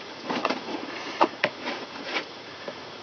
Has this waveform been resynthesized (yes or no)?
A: yes